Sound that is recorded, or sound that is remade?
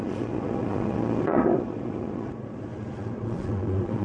remade